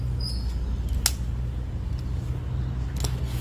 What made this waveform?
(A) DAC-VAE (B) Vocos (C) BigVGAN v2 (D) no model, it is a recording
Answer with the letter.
D